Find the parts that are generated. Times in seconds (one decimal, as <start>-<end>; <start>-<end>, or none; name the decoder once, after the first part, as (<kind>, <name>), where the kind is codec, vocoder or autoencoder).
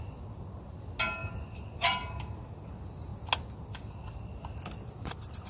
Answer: none